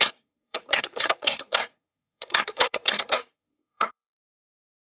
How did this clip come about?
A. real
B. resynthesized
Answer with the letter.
B